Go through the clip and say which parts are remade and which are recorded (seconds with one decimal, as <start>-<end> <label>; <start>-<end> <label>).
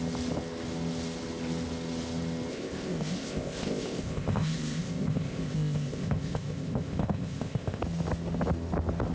0.0-2.5 recorded; 2.5-7.8 remade; 7.8-9.1 recorded